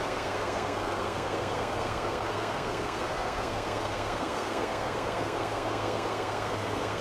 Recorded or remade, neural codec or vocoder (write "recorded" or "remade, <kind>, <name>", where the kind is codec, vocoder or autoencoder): remade, codec, SNAC